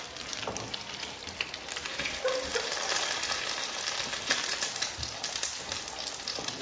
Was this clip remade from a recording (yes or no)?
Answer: no